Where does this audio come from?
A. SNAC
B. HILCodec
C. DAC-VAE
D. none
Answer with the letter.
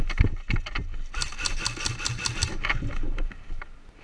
D